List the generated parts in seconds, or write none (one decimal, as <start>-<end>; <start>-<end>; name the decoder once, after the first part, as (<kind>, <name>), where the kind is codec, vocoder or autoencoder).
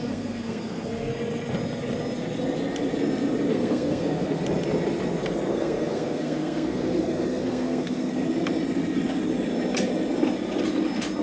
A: 0.0-1.1 (codec, SNAC); 3.5-4.4; 5.5-8.1